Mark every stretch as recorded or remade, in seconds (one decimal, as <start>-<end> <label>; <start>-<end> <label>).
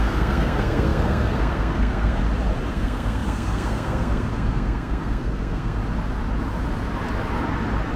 0.0-2.2 remade; 2.2-2.7 recorded; 2.7-5.8 remade; 5.8-8.0 recorded